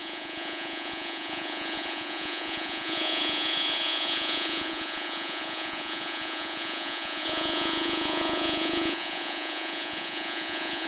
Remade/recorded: remade